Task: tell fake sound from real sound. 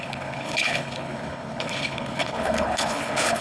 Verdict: fake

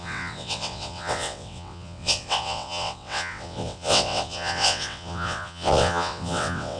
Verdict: fake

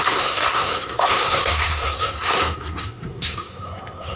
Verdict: fake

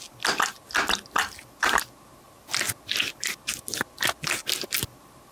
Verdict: real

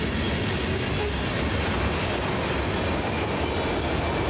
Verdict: real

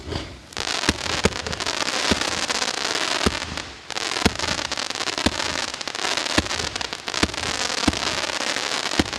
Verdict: real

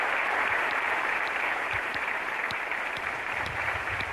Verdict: fake